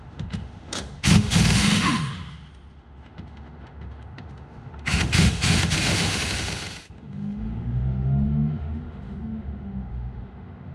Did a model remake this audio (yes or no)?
yes